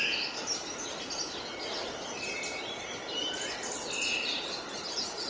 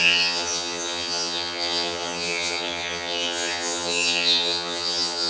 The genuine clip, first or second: first